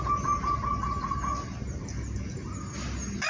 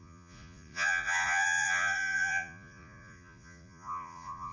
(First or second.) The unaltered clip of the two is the first